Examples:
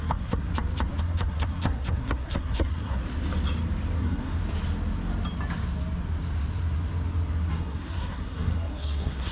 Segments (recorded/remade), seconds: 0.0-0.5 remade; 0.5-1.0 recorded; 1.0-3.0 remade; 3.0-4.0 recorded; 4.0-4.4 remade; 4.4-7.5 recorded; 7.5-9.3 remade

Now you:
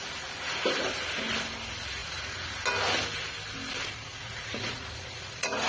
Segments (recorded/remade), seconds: 0.0-2.0 recorded; 2.0-2.5 remade; 2.5-4.1 recorded; 4.1-5.7 remade

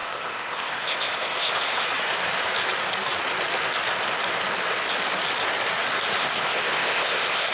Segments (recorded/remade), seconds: 0.0-1.7 remade; 1.7-6.2 recorded; 6.2-7.5 remade

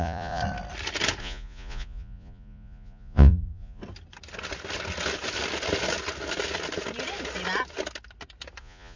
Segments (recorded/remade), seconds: 0.0-0.4 remade; 0.4-1.2 recorded; 1.2-3.8 remade; 3.8-8.6 recorded; 8.6-9.0 remade

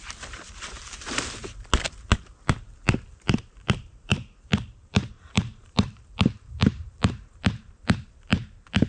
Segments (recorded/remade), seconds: 0.0-1.4 remade; 1.4-3.5 recorded; 3.5-8.9 remade